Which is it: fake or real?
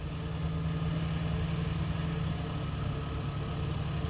real